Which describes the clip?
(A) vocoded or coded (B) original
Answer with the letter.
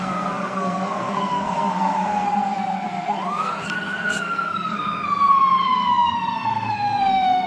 A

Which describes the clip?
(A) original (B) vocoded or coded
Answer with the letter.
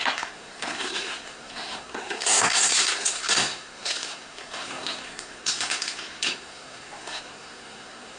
B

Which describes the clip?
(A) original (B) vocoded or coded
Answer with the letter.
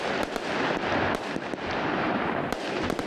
A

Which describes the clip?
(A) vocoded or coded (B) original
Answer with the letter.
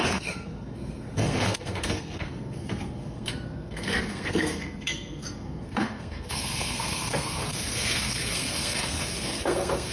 A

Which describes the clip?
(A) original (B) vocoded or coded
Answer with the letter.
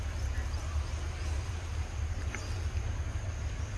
A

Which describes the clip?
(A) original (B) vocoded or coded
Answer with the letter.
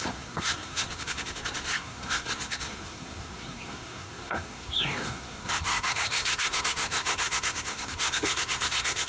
B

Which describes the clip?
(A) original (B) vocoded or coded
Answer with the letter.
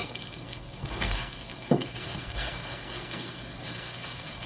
B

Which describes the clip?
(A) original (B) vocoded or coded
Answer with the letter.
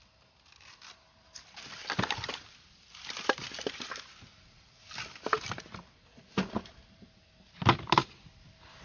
A